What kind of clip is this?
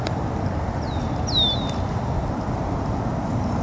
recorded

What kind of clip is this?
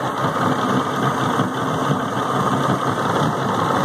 recorded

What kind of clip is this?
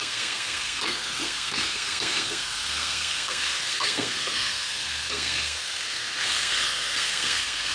remade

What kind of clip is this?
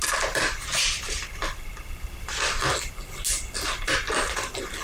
recorded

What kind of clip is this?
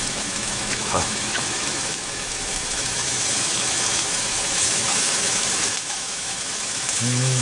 remade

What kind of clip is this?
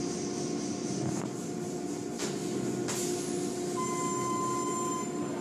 recorded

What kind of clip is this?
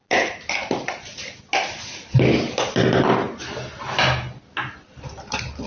recorded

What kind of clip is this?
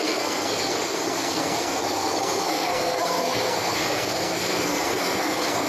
remade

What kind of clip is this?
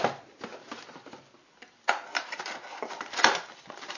recorded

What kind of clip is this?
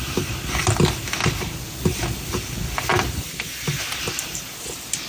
recorded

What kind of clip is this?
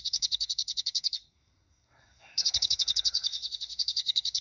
remade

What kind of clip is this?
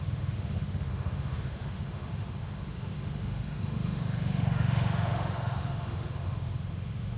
remade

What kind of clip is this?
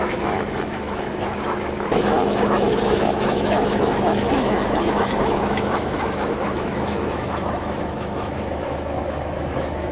remade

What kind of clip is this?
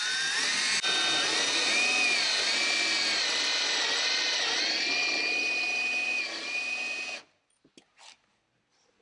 recorded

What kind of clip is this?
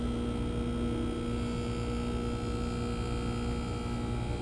recorded